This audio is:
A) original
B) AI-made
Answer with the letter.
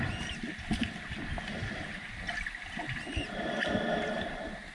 A